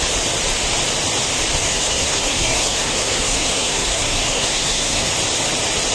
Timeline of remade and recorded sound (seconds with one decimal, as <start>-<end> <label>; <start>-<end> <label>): 0.0-1.6 recorded; 1.6-5.1 remade; 5.1-5.9 recorded